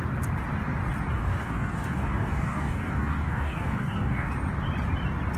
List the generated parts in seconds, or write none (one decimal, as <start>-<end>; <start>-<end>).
1.1-4.3

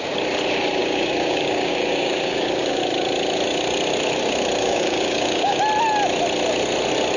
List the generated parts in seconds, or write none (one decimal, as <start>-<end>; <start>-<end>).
0.8-2.8; 4.6-5.6

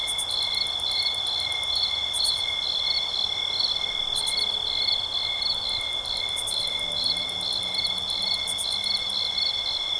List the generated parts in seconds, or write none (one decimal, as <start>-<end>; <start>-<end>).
none

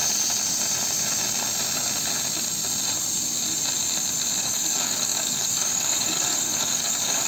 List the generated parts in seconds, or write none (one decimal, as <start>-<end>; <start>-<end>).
4.4-7.3

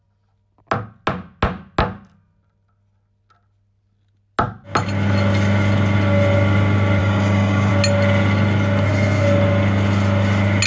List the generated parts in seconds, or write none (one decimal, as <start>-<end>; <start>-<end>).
7.0-7.7

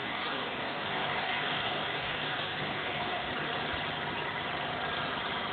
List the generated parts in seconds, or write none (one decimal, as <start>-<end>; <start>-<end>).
0.0-3.3